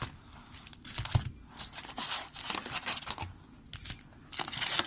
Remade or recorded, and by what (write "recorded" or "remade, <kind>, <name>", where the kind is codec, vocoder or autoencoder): recorded